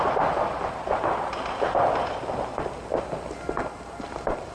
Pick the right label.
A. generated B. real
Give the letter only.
B